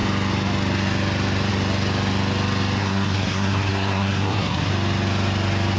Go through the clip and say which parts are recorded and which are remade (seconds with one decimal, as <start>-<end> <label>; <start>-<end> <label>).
0.0-2.8 recorded; 2.8-4.7 remade; 4.7-5.8 recorded